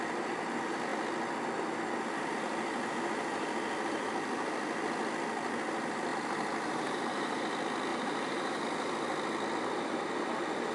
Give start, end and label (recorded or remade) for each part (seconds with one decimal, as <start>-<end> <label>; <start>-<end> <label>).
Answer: 0.0-6.1 recorded; 6.1-7.4 remade; 7.4-7.9 recorded; 7.9-8.6 remade; 8.6-10.7 recorded